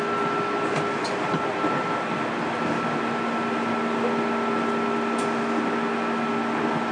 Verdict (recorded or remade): recorded